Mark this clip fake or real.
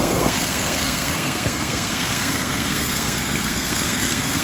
fake